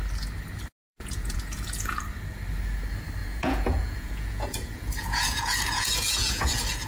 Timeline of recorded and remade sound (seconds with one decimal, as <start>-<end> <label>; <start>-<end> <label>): 0.0-0.8 recorded; 0.8-2.0 remade; 2.0-3.2 recorded; 3.2-6.9 remade